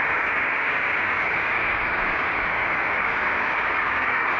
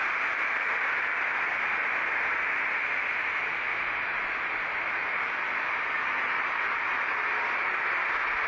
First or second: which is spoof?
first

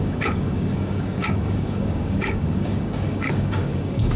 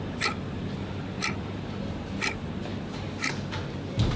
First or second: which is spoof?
first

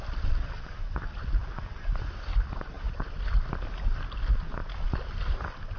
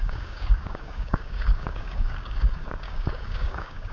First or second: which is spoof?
second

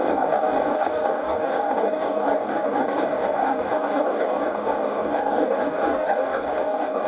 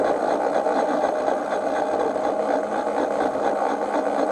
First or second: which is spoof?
first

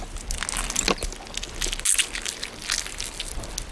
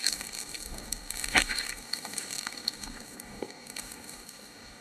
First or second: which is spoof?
second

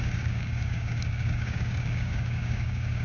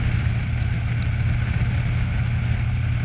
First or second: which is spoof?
first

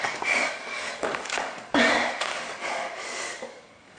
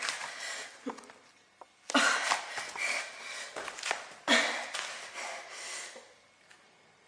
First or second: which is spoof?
first